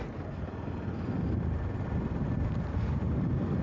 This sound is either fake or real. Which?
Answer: real